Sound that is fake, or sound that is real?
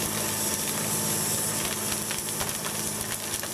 real